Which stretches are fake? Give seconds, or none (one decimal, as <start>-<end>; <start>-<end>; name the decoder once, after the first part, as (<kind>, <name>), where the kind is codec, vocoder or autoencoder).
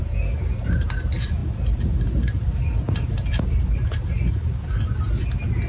none